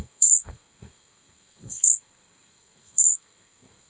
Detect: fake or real fake